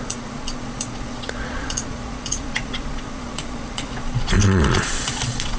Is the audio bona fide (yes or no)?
no